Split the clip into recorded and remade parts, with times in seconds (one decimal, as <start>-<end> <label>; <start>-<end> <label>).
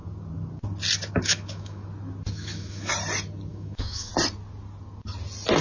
0.0-1.1 recorded; 1.1-1.8 remade; 1.8-2.3 recorded; 2.3-2.9 remade; 2.9-3.5 recorded; 3.5-4.1 remade; 4.1-5.6 recorded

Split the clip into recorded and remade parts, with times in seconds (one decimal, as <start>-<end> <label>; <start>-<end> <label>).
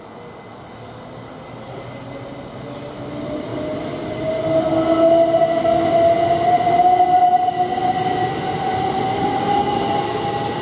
0.0-9.6 recorded; 9.6-10.2 remade; 10.2-10.6 recorded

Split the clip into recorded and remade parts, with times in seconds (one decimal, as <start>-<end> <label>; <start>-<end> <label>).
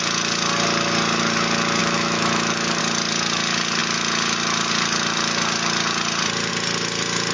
0.0-1.8 recorded; 1.8-2.8 remade; 2.8-7.3 recorded